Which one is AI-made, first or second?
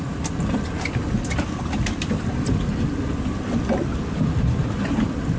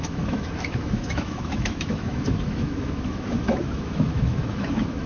second